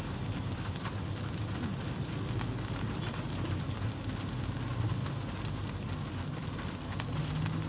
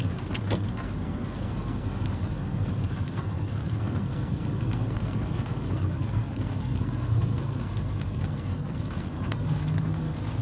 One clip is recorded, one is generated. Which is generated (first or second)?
second